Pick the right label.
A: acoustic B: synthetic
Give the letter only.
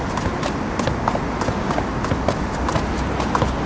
A